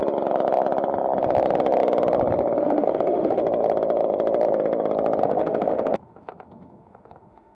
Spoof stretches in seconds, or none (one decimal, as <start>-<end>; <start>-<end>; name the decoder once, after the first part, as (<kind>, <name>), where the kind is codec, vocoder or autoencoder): 2.6-3.4 (autoencoder, DAC-VAE); 5.2-7.5